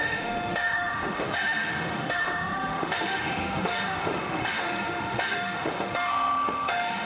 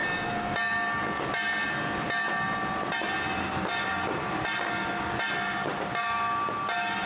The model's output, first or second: first